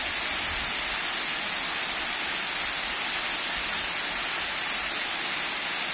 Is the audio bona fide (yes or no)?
yes